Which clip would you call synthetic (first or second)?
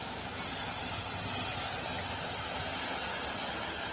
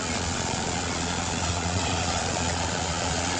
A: second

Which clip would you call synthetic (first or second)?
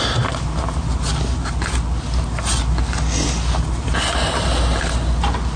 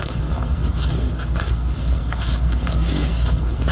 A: second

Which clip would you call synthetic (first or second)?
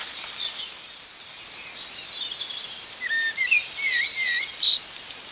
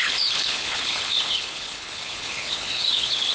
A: second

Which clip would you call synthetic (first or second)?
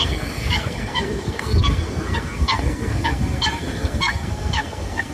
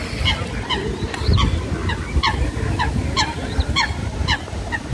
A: first